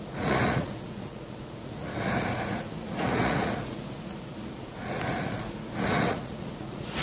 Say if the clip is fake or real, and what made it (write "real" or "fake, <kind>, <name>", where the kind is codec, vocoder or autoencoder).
fake, vocoder, Vocos